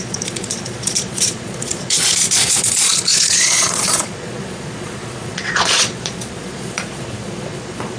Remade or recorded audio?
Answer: remade